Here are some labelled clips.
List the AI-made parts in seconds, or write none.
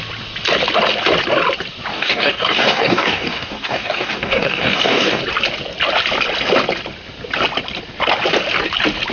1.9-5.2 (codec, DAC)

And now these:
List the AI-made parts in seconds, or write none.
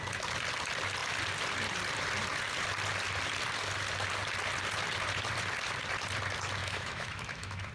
6.6-7.7 (autoencoder, DAC-VAE)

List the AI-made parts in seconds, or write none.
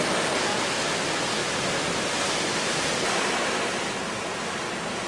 none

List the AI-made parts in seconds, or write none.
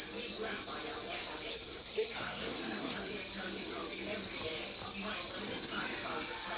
1.5-3.1 (codec, SNAC)